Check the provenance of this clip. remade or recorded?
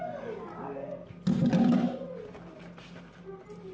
recorded